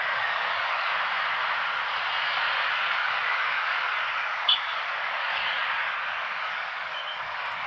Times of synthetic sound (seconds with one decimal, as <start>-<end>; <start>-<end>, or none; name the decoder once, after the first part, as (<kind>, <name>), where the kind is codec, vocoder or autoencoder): 0.0-0.9 (codec, DAC); 2.7-7.7